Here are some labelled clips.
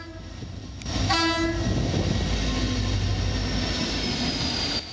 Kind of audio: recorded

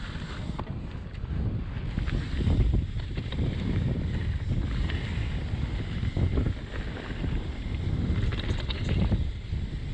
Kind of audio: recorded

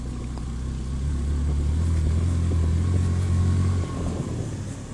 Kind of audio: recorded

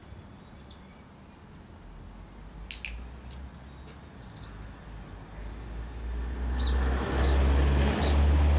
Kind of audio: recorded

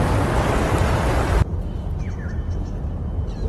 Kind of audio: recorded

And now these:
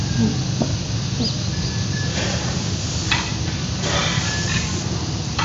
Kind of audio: recorded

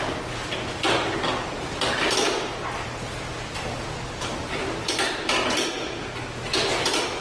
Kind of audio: remade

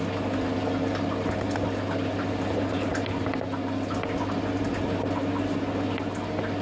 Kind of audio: recorded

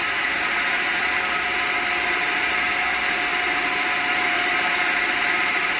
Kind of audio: remade